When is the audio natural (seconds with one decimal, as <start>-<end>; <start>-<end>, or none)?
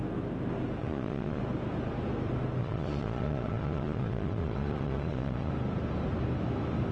0.0-0.8; 1.4-2.6; 5.5-6.9